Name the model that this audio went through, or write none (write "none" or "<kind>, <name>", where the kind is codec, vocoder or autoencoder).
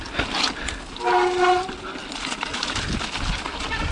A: none